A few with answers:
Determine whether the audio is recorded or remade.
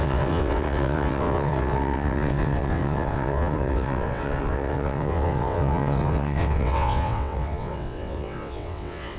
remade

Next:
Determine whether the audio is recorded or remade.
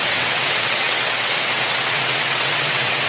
remade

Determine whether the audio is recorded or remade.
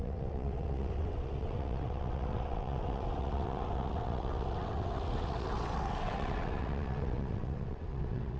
remade